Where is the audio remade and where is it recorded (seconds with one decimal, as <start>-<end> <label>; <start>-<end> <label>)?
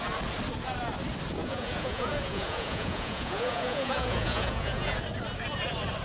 0.0-1.4 recorded; 1.4-5.0 remade; 5.0-6.0 recorded